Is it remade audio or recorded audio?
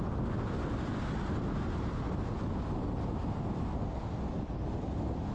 recorded